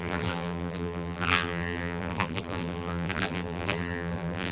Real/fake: fake